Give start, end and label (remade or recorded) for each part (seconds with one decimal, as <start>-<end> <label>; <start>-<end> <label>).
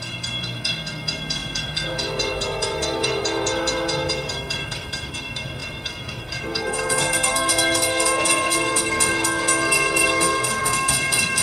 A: 0.0-11.4 remade